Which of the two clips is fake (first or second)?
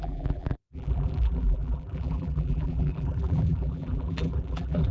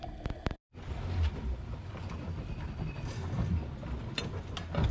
first